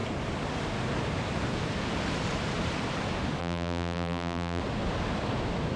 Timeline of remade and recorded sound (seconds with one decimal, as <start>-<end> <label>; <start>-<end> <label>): 0.0-3.4 recorded; 3.4-4.6 remade; 4.6-5.8 recorded